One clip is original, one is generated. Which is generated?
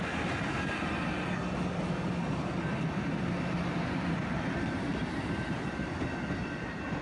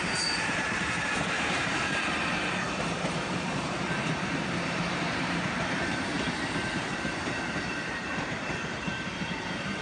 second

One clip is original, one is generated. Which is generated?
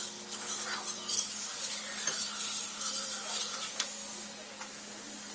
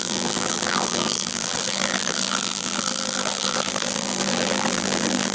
second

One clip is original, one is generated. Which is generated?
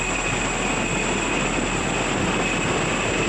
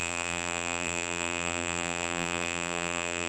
second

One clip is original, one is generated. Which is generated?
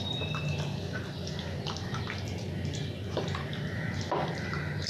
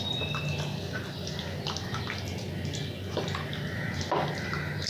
first